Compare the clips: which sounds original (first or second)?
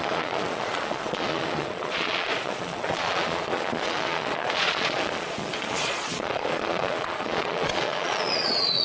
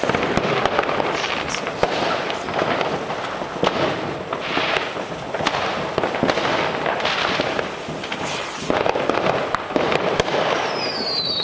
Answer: second